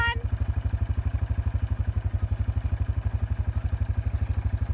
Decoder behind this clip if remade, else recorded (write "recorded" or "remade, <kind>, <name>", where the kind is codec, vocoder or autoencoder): recorded